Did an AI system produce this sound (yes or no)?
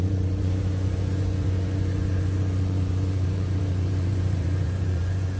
yes